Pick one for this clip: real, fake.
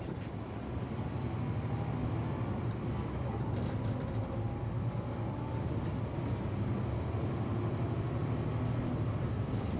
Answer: real